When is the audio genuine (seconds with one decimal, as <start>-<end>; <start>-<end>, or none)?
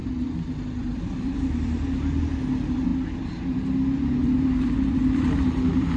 2.2-4.2; 5.4-6.0